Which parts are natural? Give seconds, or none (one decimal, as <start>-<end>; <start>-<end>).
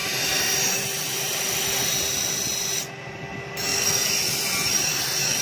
0.0-5.4